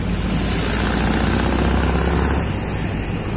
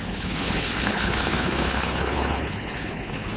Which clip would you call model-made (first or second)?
second